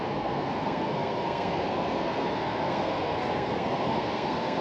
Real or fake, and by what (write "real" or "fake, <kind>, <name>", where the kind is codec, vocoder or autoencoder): fake, codec, SNAC